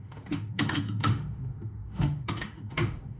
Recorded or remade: remade